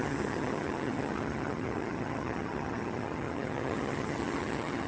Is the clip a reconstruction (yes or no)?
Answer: yes